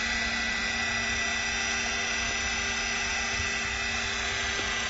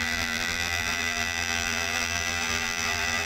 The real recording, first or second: first